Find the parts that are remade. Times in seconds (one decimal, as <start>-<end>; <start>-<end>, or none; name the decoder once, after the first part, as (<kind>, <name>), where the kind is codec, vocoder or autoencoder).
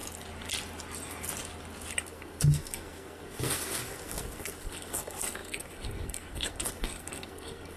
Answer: 2.0-7.8 (codec, SNAC)